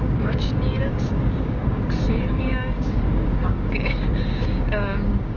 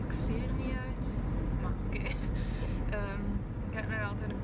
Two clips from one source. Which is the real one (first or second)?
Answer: second